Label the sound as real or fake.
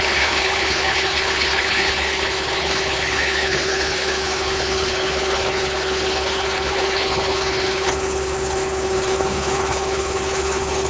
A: fake